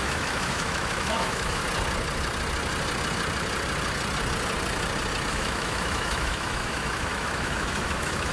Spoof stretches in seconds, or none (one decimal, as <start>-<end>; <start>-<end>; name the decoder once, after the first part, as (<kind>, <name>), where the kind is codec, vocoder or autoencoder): 0.0-1.6 (autoencoder, DAC-VAE); 5.3-8.3